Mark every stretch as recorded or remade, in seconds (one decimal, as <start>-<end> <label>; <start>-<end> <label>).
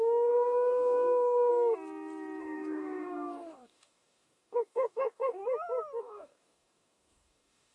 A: 0.0-1.5 remade; 1.5-2.4 recorded; 2.4-5.4 remade; 5.4-6.0 recorded; 6.0-7.7 remade